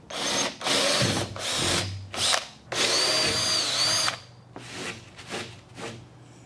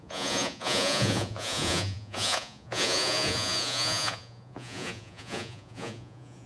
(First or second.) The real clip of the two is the first